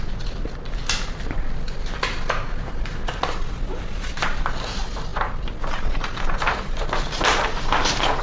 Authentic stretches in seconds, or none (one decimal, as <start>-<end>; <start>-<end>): 0.0-8.2